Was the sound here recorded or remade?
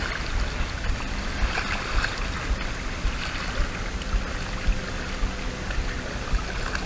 recorded